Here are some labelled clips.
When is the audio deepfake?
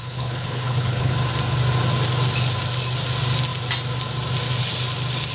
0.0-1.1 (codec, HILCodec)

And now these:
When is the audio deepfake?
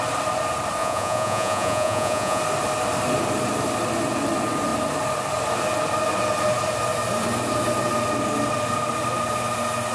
0.8-2.4 (vocoder, Vocos)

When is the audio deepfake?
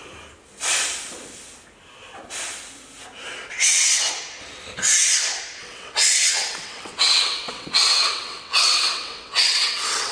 3.5-4.1 (vocoder, WaveNeXt); 5.6-10.1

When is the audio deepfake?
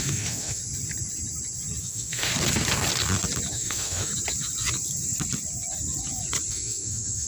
0.0-0.6 (autoencoder, DAC-VAE); 1.8-2.3; 3.5-4.1; 6.5-7.3